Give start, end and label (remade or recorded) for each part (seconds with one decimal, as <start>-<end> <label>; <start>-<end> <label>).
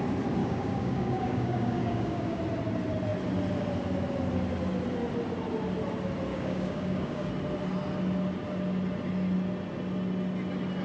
0.0-0.4 recorded; 0.4-2.4 remade; 2.4-6.3 recorded; 6.3-7.3 remade; 7.3-10.8 recorded